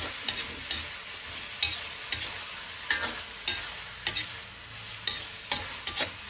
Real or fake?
real